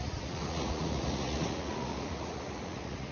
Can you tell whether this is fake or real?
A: fake